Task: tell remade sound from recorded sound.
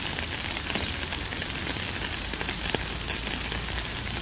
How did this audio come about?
recorded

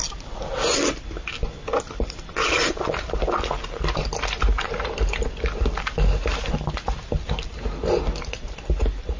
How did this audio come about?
recorded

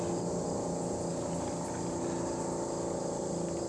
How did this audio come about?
recorded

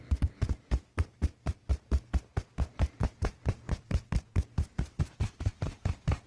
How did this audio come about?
remade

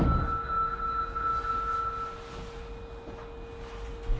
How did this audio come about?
recorded